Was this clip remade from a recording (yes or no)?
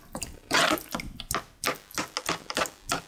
no